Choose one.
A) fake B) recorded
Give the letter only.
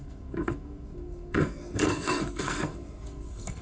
A